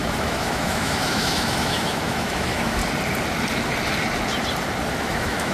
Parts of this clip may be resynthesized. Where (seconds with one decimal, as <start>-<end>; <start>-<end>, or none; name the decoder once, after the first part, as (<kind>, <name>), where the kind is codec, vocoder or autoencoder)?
0.0-2.8 (autoencoder, DAC-VAE); 5.0-5.5